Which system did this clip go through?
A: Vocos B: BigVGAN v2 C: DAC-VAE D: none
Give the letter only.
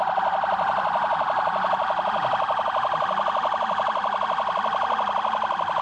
D